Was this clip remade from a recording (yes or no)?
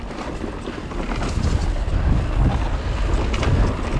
no